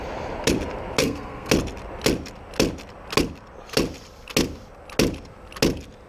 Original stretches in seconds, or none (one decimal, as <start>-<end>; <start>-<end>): 0.0-1.0; 1.5-6.1